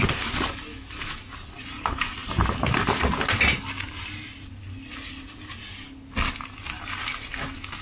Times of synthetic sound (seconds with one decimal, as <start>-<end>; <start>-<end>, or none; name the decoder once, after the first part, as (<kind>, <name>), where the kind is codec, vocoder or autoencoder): 0.7-1.2 (autoencoder, DAC-VAE)